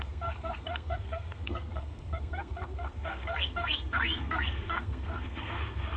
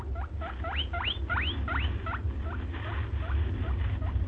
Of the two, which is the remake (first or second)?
first